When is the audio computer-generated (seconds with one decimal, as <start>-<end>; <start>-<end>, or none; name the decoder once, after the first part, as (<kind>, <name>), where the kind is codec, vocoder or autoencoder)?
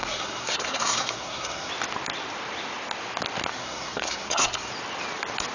0.0-1.7 (codec, SNAC); 3.5-4.7